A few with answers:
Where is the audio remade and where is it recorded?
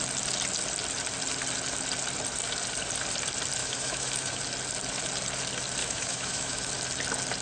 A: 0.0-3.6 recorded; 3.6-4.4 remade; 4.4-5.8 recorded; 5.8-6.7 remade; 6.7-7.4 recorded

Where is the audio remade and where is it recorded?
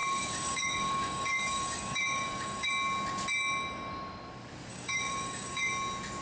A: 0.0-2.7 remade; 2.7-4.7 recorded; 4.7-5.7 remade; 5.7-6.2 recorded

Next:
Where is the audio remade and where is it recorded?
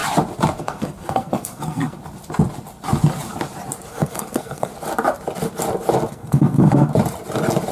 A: 0.0-0.6 recorded; 0.6-2.0 remade; 2.0-3.9 recorded; 3.9-4.7 remade; 4.7-6.1 recorded; 6.1-6.9 remade; 6.9-7.7 recorded